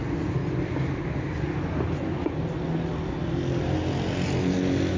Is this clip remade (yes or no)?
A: no